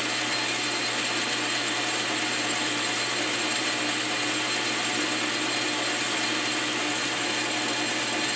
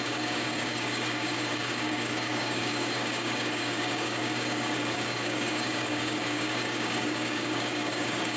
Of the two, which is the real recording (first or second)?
first